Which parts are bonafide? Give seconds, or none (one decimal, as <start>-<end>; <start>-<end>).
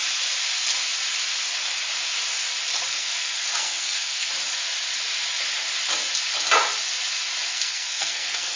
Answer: 0.0-2.9; 4.3-7.5